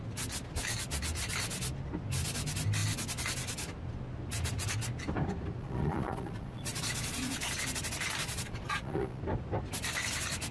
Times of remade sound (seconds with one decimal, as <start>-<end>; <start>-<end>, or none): 5.6-7.5; 8.2-9.2